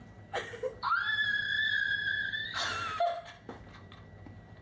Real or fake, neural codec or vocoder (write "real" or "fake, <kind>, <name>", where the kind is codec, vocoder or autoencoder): fake, vocoder, BigVGAN v2